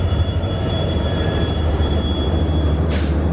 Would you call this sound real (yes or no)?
no